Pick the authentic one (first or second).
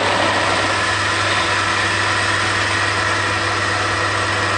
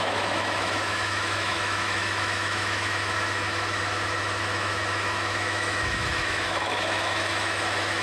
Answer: first